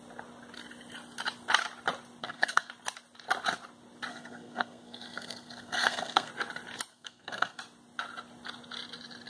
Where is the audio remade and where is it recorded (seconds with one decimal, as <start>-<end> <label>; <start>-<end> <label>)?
0.0-2.2 recorded; 2.2-2.7 remade; 2.7-4.1 recorded; 4.1-6.3 remade; 6.3-6.9 recorded; 6.9-7.6 remade; 7.6-9.3 recorded